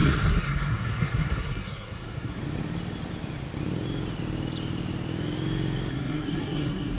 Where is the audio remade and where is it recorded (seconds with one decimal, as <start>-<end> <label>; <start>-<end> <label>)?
0.0-2.4 remade; 2.4-5.9 recorded; 5.9-7.0 remade